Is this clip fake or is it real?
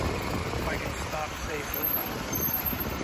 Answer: fake